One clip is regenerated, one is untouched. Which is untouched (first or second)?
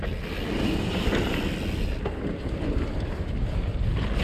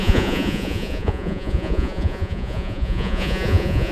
first